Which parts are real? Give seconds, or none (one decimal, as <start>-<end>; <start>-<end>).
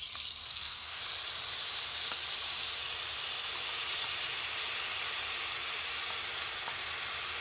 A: 0.0-0.5; 1.0-7.4